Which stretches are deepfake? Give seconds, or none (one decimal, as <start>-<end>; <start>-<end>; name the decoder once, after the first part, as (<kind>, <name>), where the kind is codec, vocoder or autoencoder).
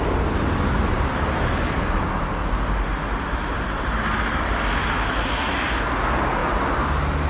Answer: 0.9-1.5 (vocoder, BigVGAN v2); 3.5-4.0